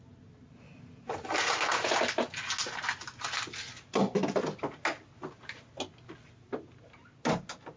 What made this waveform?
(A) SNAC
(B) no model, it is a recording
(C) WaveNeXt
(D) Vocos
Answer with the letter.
B